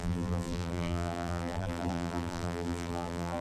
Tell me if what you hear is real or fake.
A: fake